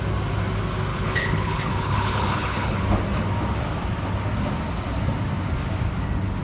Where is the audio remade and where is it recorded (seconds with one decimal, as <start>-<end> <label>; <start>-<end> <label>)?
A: 0.0-0.9 recorded; 0.9-2.8 remade; 2.8-6.4 recorded